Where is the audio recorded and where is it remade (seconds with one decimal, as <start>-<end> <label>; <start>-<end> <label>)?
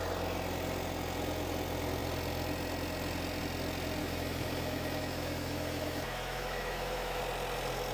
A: 0.0-4.0 recorded; 4.0-7.2 remade; 7.2-7.9 recorded